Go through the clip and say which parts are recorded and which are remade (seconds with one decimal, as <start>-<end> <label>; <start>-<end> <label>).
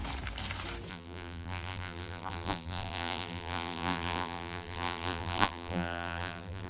0.0-0.9 recorded; 0.9-6.7 remade